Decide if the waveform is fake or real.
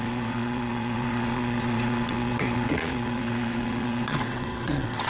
fake